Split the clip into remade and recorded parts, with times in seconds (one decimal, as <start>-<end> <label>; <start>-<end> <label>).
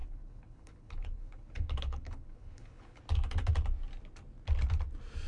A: 0.0-3.0 remade; 3.0-5.3 recorded